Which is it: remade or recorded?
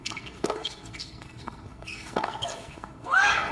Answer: remade